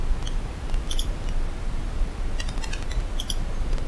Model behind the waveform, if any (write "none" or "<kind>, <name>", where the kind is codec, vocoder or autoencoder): none